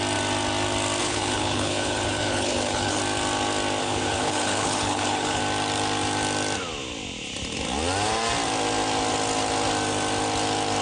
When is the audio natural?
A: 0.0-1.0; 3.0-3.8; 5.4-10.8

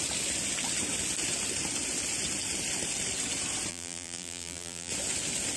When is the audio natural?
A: 0.0-3.7; 4.9-5.6